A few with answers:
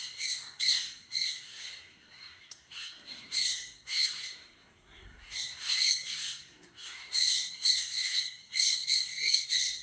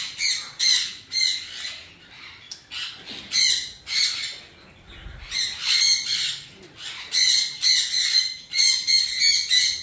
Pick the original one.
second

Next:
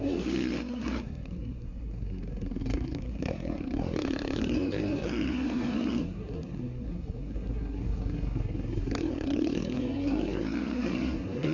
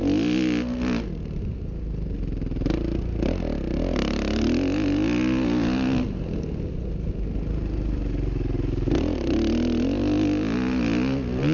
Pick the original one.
second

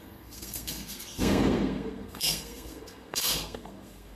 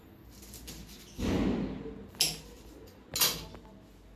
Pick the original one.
second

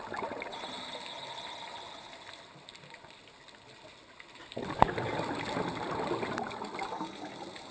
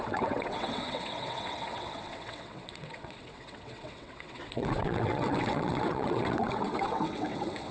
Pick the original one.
first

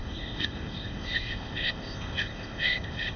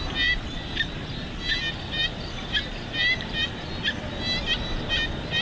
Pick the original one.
second